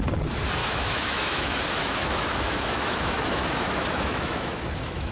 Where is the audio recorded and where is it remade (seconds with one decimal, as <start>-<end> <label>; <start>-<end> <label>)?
0.0-0.6 recorded; 0.6-1.6 remade; 1.6-2.0 recorded; 2.0-5.1 remade